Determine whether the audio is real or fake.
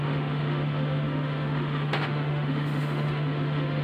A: fake